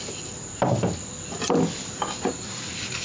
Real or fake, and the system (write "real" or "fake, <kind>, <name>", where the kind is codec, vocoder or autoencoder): real